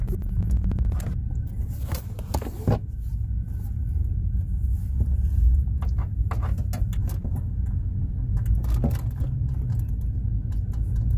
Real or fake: real